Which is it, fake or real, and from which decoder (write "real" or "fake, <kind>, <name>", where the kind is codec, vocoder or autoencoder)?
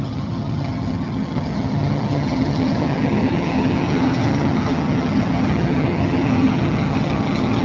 fake, vocoder, HiFi-GAN